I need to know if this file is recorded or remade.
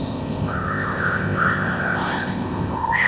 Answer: remade